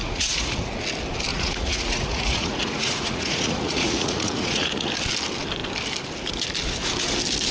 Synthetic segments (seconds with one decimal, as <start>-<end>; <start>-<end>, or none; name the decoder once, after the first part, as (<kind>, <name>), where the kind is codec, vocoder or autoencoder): 0.0-0.7 (vocoder, Vocos); 1.3-4.9